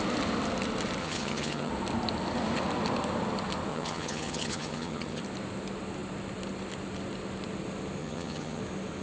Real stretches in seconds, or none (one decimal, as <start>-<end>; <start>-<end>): 0.0-1.0; 1.7-3.7; 5.2-8.0; 8.6-9.0

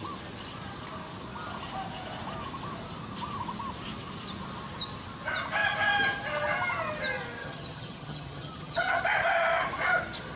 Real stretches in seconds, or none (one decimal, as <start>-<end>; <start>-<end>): 0.0-7.4; 9.0-10.4

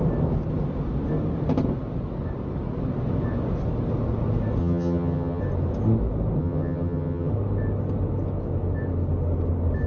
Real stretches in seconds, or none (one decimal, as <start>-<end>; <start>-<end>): 0.0-4.6; 5.4-6.4; 7.3-9.9

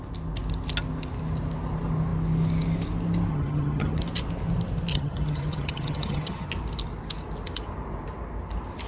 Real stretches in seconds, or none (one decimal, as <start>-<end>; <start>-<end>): 0.0-3.3; 4.0-4.9; 6.5-8.9

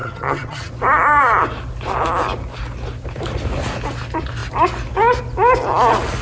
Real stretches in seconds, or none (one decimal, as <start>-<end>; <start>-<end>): 0.7-6.2